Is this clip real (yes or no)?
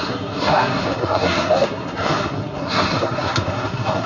no